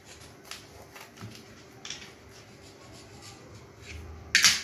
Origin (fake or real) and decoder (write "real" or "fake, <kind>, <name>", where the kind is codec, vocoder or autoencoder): real